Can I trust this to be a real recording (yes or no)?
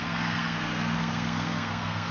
no